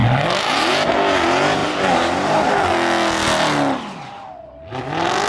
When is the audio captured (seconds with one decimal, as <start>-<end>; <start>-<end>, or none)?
0.0-5.3